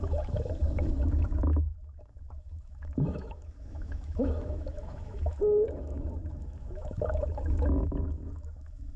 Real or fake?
fake